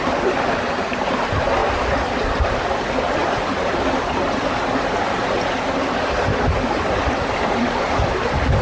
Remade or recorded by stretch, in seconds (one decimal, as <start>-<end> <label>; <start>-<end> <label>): 0.0-8.6 recorded